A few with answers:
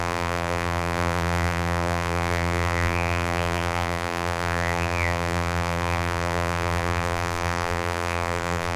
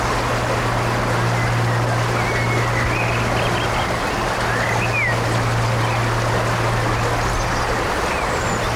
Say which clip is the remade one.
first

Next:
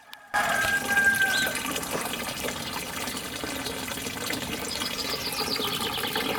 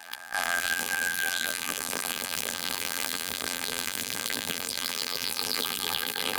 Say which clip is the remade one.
second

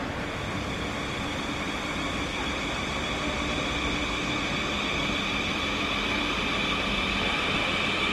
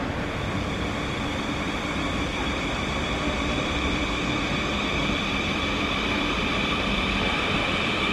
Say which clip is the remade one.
second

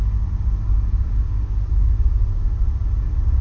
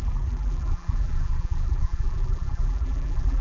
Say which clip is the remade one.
second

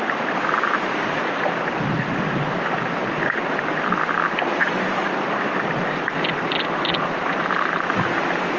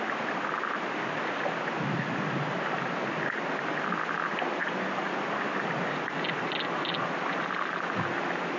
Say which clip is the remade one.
first